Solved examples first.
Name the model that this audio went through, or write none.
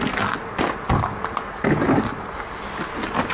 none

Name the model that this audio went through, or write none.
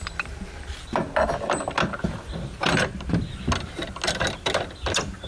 none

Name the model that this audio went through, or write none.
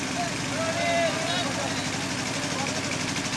none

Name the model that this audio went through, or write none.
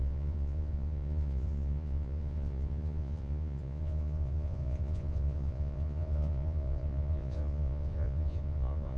vocoder, Vocos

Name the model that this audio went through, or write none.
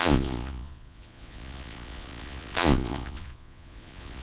vocoder, Vocos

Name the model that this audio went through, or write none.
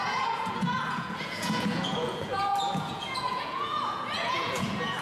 vocoder, Vocos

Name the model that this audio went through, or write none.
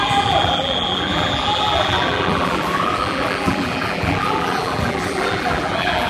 vocoder, BigVGAN v2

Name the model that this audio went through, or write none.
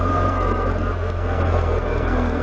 codec, SNAC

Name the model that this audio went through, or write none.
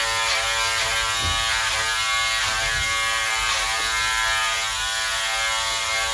none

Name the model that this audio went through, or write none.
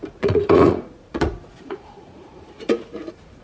vocoder, Vocos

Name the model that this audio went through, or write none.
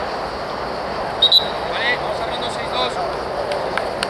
none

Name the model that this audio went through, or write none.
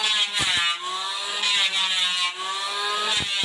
none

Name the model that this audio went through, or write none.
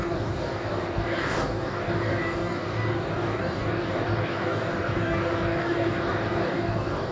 codec, DAC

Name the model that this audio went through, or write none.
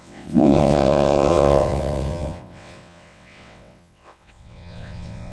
vocoder, WaveNeXt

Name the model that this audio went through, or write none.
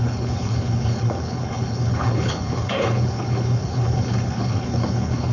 codec, HILCodec